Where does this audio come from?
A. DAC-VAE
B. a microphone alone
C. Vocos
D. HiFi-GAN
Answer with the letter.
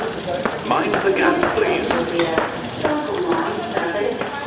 B